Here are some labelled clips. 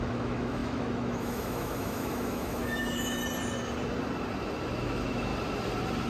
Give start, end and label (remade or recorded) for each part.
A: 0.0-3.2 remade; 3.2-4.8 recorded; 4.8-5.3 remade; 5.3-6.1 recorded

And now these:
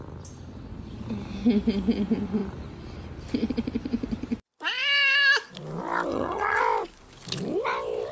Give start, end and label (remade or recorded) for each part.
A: 0.0-6.1 recorded; 6.1-6.6 remade; 6.6-8.1 recorded

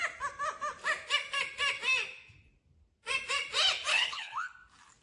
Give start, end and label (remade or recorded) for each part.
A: 0.0-3.9 recorded; 3.9-4.5 remade; 4.5-5.0 recorded

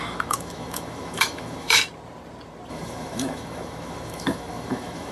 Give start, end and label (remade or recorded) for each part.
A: 0.0-1.8 remade; 1.8-2.7 recorded; 2.7-5.1 remade

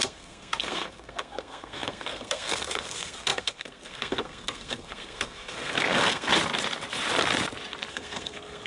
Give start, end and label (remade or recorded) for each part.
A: 0.0-6.3 remade; 6.3-7.9 recorded; 7.9-8.7 remade

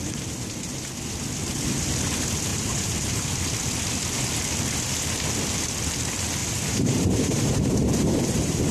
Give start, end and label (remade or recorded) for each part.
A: 0.0-2.5 recorded; 2.5-3.4 remade; 3.4-6.4 recorded; 6.4-8.7 remade

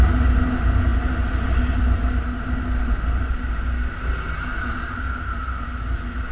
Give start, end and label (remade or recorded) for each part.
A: 0.0-6.3 recorded

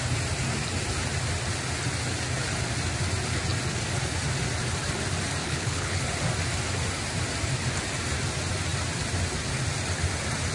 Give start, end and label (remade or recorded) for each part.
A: 0.0-5.4 recorded; 5.4-6.0 remade; 6.0-10.5 recorded